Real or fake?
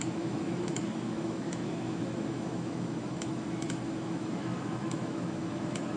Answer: fake